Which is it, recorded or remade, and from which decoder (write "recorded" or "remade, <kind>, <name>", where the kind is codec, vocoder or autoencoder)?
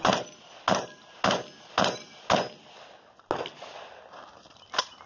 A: recorded